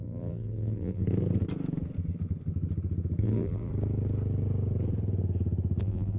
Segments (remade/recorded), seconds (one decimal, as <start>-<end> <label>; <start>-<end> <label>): 0.0-1.0 remade; 1.0-3.2 recorded; 3.2-3.7 remade; 3.7-5.8 recorded; 5.8-6.2 remade